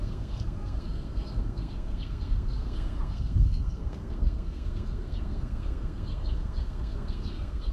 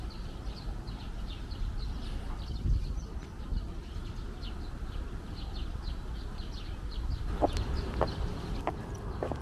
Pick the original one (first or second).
second